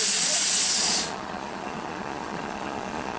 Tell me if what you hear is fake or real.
fake